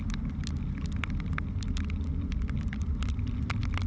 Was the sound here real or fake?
real